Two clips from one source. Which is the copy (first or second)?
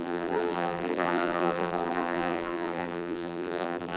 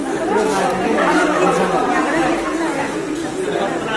first